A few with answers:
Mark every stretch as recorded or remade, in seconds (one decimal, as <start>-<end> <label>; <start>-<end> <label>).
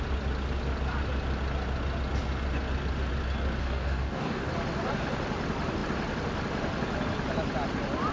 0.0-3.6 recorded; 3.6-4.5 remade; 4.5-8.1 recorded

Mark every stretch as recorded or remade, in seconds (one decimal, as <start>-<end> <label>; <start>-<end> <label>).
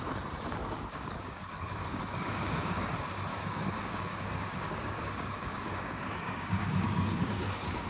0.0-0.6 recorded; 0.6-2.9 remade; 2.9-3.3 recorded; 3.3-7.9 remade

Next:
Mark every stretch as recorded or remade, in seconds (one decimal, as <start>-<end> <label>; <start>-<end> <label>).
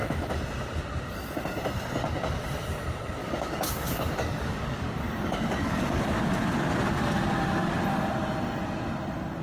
0.0-3.2 recorded; 3.2-6.0 remade; 6.0-9.4 recorded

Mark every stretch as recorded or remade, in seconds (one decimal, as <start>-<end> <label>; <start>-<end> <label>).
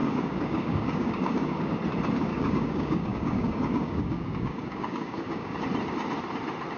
0.0-1.7 remade; 1.7-2.3 recorded; 2.3-5.6 remade; 5.6-6.8 recorded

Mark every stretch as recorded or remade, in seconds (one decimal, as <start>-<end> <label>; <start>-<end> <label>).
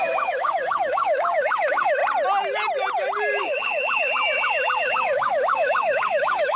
0.0-2.0 remade; 2.0-3.4 recorded; 3.4-6.6 remade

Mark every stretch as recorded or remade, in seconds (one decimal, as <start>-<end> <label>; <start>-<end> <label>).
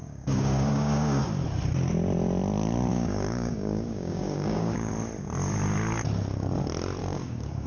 0.0-1.2 remade; 1.2-2.9 recorded; 2.9-4.9 remade; 4.9-7.0 recorded; 7.0-7.7 remade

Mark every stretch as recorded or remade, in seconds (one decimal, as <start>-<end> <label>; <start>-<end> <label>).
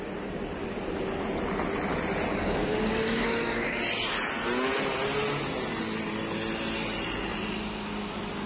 0.0-2.3 recorded; 2.3-3.8 remade; 3.8-8.5 recorded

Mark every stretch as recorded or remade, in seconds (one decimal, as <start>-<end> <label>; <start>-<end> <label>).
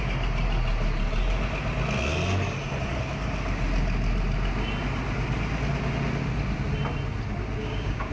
0.0-7.6 recorded; 7.6-8.1 remade